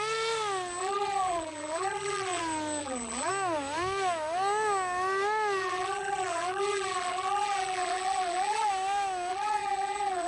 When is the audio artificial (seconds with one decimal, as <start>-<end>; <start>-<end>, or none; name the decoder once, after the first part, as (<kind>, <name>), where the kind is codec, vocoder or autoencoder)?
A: 0.8-2.4 (vocoder, BigVGAN v2); 2.8-3.3; 5.6-8.7; 9.3-10.3